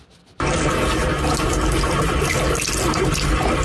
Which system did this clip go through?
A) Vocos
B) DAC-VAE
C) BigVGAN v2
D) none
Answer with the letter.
D